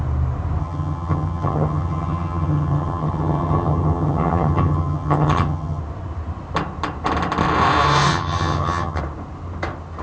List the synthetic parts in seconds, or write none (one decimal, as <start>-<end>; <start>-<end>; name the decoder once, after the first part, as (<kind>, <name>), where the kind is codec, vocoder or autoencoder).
0.6-5.8 (vocoder, HiFi-GAN); 8.1-9.0